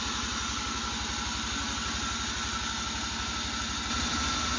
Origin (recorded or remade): recorded